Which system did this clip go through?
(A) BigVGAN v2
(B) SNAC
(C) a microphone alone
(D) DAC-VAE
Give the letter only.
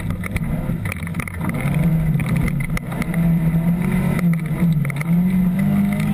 C